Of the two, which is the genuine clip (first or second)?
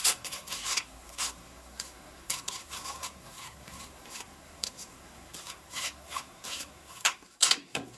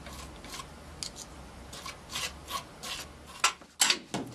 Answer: second